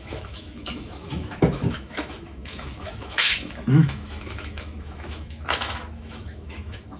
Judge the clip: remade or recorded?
remade